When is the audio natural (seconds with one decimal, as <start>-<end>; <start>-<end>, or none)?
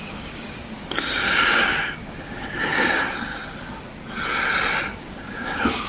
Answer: 2.6-4.9